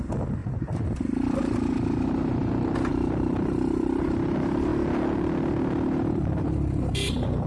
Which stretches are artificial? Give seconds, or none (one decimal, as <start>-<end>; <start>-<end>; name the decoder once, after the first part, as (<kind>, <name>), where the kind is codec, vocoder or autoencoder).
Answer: 0.0-0.4 (vocoder, BigVGAN v2); 2.9-4.7; 5.7-7.5